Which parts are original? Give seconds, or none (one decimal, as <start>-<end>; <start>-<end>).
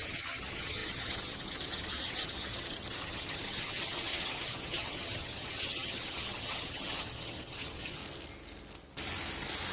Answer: 8.0-9.7